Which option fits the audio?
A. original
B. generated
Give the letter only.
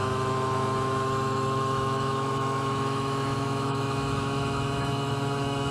B